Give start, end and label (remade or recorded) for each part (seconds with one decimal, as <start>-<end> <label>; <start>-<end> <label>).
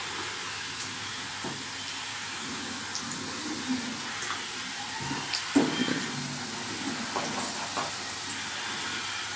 0.0-0.4 recorded; 0.4-1.2 remade; 1.2-2.1 recorded; 2.1-2.8 remade; 2.8-9.4 recorded